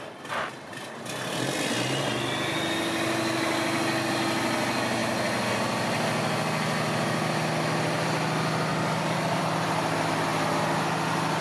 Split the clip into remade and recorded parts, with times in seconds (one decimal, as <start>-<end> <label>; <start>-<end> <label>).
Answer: 0.0-8.7 recorded; 8.7-9.4 remade; 9.4-11.4 recorded